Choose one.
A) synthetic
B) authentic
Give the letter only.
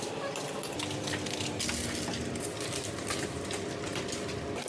B